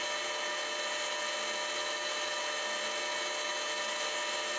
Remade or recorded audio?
recorded